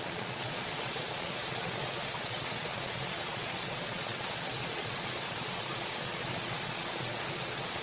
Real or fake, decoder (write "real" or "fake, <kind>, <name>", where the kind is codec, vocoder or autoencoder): fake, vocoder, Vocos